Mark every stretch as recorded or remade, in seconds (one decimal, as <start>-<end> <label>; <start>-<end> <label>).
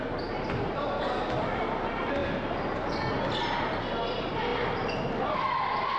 0.0-2.2 remade; 2.2-3.6 recorded; 3.6-6.0 remade